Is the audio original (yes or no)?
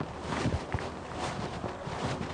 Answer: no